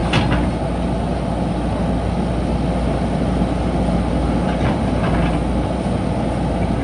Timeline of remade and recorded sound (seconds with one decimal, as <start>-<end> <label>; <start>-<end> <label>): 0.0-6.8 recorded